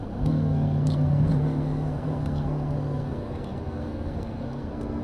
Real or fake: fake